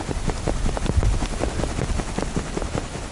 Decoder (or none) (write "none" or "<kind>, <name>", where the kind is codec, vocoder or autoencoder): none